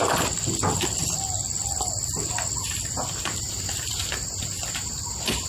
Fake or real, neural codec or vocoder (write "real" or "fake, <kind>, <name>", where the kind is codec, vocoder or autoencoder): real